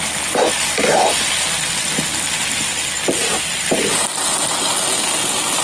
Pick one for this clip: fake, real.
real